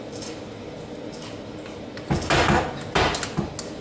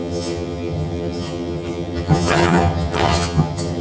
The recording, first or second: first